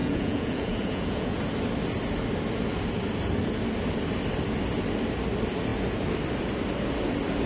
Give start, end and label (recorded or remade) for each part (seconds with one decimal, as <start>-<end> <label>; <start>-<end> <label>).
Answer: 0.0-1.4 remade; 1.4-7.5 recorded